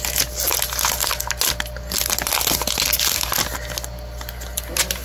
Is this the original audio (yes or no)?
yes